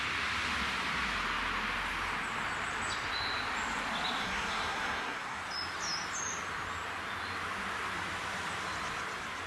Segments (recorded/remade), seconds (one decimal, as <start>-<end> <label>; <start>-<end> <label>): 0.0-4.2 recorded; 4.2-5.4 remade; 5.4-9.5 recorded